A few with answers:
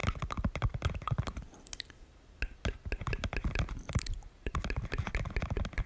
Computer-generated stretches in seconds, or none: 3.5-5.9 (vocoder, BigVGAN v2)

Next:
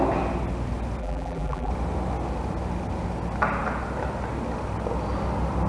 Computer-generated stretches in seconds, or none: 1.0-1.7 (vocoder, BigVGAN v2)

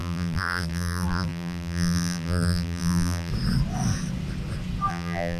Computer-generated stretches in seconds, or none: 0.0-3.3 (vocoder, BigVGAN v2); 4.9-5.4

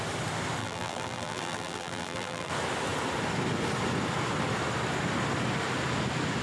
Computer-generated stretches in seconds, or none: 0.6-2.5 (vocoder, BigVGAN v2)